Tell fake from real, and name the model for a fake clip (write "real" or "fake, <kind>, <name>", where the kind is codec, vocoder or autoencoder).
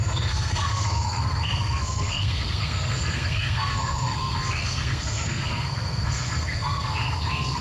fake, codec, SNAC